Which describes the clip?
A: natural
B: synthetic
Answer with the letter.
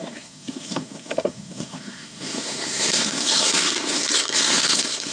B